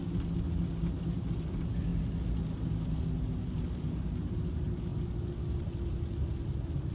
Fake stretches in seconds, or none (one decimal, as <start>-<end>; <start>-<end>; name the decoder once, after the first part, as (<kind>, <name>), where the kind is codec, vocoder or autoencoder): none